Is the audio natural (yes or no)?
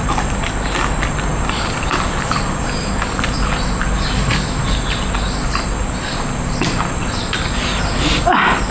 yes